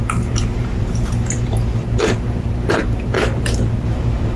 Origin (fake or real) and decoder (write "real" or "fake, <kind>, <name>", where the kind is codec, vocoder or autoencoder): fake, vocoder, BigVGAN v2